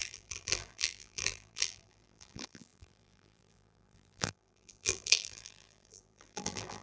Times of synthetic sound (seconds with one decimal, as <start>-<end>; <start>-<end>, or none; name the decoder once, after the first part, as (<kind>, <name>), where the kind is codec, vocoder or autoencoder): 0.0-6.8 (vocoder, BigVGAN v2)